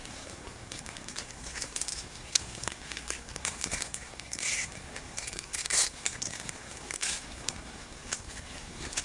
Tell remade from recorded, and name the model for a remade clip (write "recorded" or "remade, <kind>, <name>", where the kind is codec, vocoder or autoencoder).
remade, codec, SNAC